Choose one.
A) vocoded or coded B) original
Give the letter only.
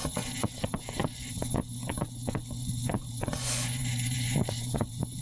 A